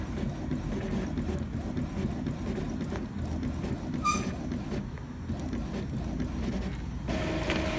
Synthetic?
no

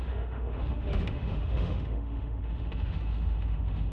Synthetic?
yes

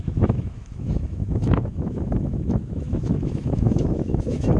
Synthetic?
yes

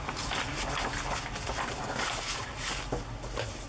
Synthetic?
no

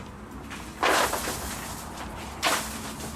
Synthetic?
no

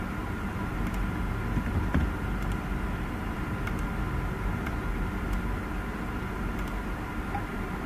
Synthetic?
no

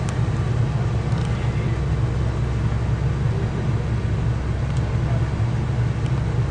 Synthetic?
no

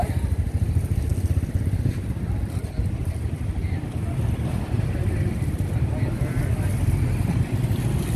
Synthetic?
no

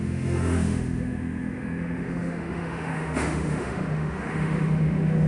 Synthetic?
yes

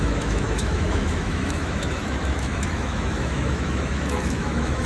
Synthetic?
yes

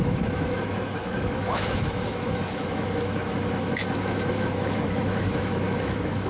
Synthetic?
yes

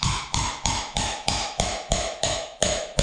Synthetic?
yes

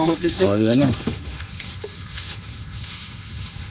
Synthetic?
yes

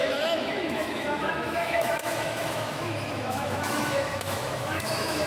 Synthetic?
yes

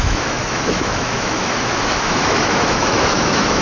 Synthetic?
yes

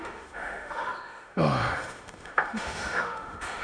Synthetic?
yes